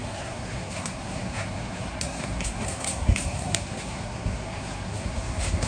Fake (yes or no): yes